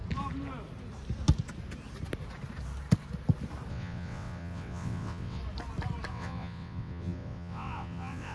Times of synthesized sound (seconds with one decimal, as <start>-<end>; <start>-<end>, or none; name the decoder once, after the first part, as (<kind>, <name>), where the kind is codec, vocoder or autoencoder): 3.7-5.4 (vocoder, WaveNeXt); 6.1-8.3